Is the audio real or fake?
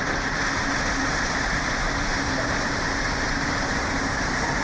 fake